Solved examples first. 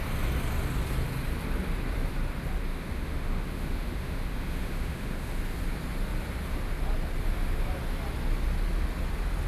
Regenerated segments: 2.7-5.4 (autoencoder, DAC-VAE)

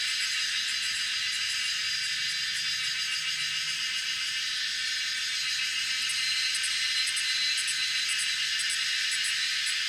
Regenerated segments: none

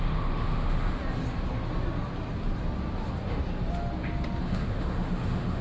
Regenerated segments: 0.0-1.0 (autoencoder, DAC-VAE); 4.4-5.6

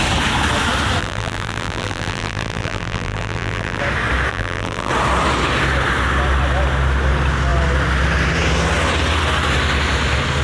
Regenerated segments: 1.0-3.8 (vocoder, BigVGAN v2); 4.3-4.9

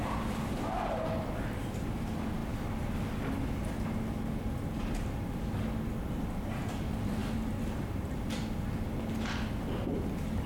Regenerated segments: none

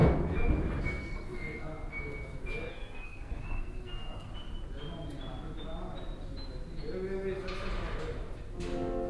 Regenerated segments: 0.8-1.7 (codec, SNAC); 2.7-4.3

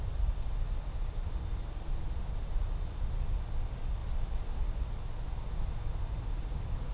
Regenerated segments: none